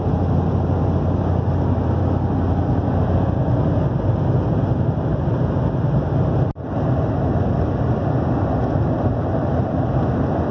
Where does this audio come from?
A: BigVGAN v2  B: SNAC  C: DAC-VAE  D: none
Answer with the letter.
D